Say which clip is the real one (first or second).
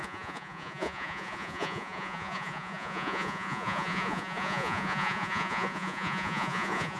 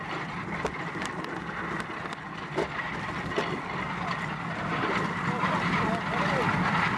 second